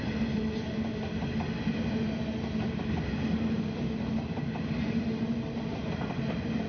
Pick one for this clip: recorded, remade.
recorded